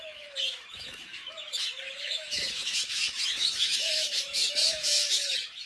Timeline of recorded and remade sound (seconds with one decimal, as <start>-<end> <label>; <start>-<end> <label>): 0.0-5.7 remade